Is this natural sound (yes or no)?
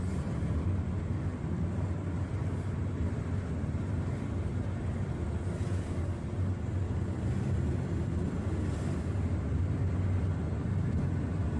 yes